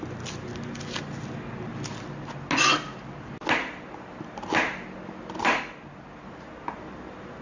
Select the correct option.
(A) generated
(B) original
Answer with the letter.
B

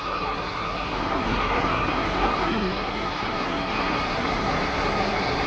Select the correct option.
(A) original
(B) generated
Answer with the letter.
B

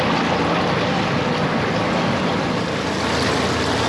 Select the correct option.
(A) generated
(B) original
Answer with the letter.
B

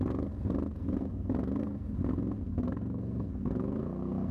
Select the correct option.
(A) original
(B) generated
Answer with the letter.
B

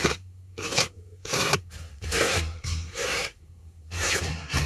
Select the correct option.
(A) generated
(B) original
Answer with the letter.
A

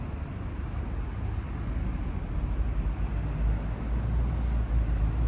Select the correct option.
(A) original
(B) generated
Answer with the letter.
A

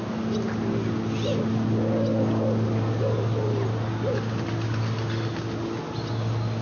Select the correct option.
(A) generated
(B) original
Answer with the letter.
B